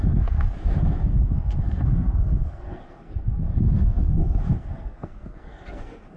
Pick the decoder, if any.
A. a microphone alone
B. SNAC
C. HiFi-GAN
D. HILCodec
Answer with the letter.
B